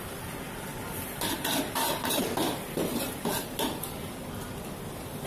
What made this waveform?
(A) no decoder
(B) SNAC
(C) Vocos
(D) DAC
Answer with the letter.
A